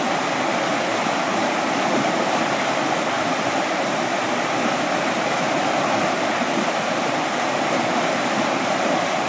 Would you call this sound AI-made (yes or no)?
yes